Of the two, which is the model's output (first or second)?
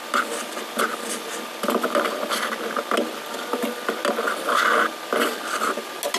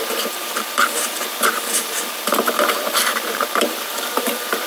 second